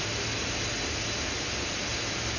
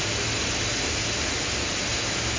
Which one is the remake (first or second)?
second